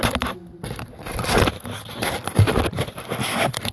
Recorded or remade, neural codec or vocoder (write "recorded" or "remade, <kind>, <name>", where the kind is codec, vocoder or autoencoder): recorded